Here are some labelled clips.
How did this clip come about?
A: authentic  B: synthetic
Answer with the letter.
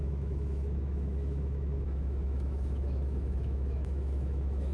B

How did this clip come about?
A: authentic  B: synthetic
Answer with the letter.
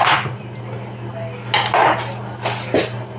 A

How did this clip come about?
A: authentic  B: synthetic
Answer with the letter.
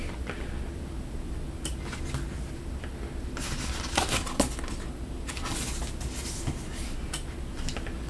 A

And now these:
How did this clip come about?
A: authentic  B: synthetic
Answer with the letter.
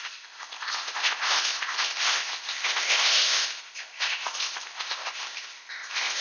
B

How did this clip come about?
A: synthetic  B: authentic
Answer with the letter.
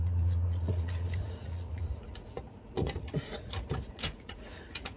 A